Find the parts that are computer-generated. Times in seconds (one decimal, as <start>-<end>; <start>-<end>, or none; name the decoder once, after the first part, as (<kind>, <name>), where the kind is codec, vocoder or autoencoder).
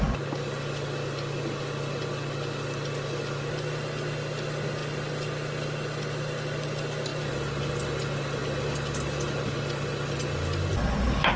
none